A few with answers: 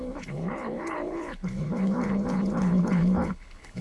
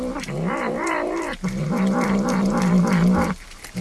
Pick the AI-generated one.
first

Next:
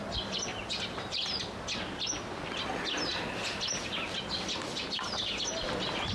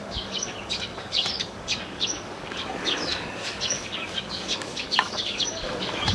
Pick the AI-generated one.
second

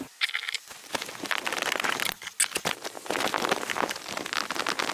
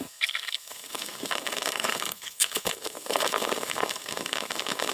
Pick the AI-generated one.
second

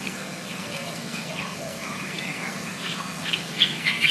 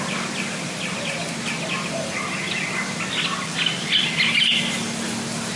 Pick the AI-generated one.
first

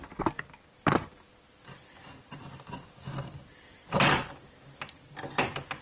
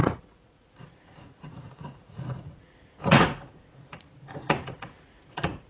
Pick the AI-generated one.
second